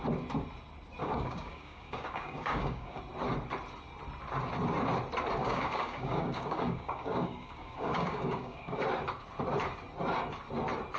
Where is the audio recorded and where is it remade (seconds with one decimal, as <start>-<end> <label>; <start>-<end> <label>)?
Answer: 0.0-1.0 recorded; 1.0-3.0 remade; 3.0-5.4 recorded; 5.4-8.8 remade; 8.8-11.0 recorded